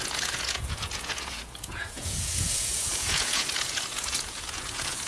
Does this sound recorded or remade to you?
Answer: remade